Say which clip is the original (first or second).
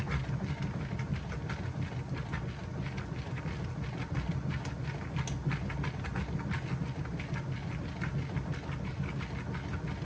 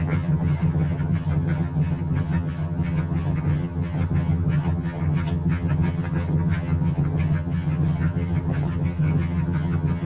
first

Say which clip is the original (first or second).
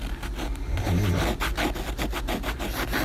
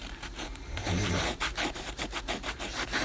first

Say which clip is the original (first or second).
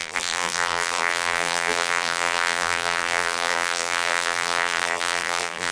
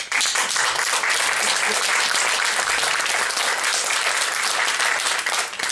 second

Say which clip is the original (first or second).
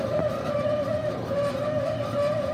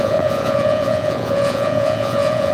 first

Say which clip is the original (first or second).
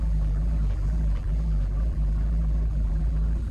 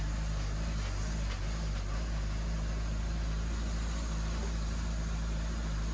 second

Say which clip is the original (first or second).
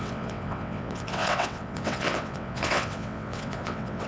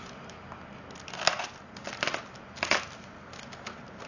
second